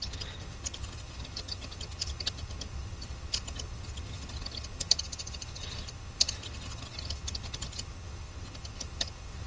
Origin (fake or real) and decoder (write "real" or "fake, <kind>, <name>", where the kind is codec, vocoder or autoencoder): fake, vocoder, HiFi-GAN